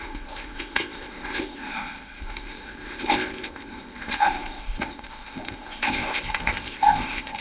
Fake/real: fake